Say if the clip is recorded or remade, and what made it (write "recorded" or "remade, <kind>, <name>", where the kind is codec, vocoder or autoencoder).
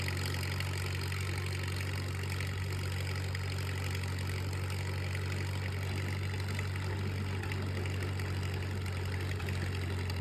recorded